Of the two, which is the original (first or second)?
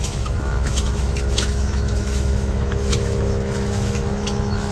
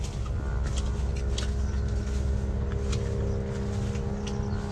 second